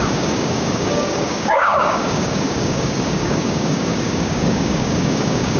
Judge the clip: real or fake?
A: fake